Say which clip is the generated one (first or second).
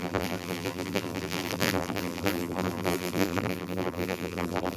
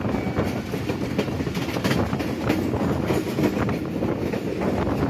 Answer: first